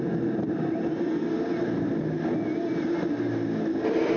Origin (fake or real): real